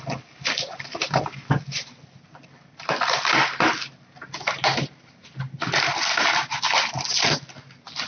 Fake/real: real